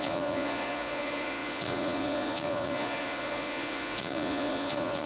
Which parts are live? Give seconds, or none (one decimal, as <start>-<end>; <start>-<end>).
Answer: none